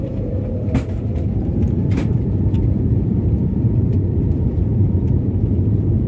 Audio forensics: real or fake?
fake